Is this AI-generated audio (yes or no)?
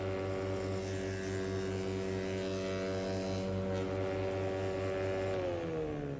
no